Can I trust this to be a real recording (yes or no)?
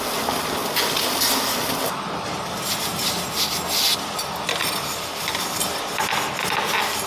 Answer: yes